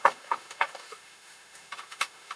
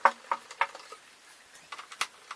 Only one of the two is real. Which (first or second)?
second